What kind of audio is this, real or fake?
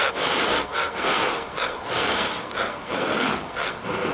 fake